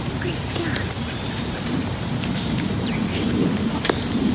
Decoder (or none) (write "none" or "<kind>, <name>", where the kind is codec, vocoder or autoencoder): vocoder, BigVGAN v2